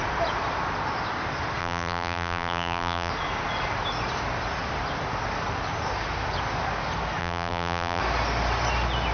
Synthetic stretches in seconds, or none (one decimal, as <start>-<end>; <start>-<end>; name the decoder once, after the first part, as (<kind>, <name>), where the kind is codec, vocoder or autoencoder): 1.6-3.1 (vocoder, BigVGAN v2); 7.2-8.0